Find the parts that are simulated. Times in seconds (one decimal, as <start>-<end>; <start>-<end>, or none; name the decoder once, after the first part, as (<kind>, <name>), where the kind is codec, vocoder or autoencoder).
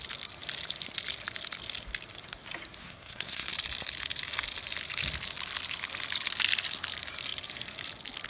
2.8-3.5 (codec, SNAC)